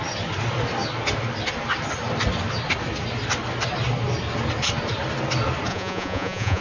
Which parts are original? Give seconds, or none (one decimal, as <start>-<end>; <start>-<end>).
0.0-5.7